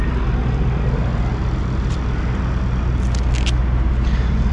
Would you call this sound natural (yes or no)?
yes